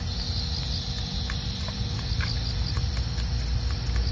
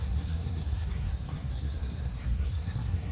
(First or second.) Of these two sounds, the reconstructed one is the second